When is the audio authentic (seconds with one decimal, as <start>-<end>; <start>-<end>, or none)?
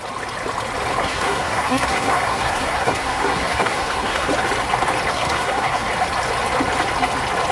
0.0-1.0; 4.3-5.1; 5.9-7.5